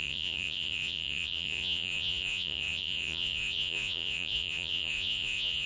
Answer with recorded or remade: remade